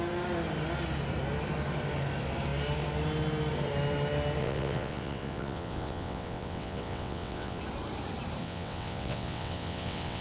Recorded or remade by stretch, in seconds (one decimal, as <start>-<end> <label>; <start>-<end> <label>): 0.0-4.4 recorded; 4.4-7.6 remade; 7.6-8.4 recorded; 8.4-10.2 remade